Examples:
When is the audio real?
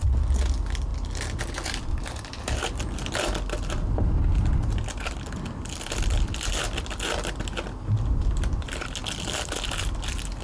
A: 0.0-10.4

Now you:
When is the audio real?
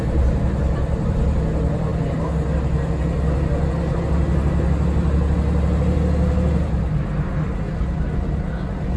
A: 0.0-9.0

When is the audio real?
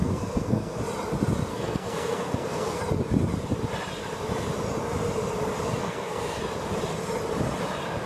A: 0.8-1.5; 2.8-5.8; 6.4-8.1